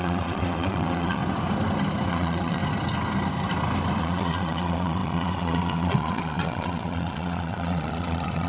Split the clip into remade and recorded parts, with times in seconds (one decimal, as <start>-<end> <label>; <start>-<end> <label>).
0.0-1.2 remade; 1.2-2.1 recorded; 2.1-2.6 remade; 2.6-4.0 recorded; 4.0-8.5 remade